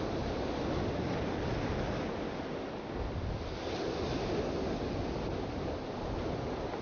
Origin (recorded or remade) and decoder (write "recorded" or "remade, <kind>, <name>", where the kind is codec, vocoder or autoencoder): recorded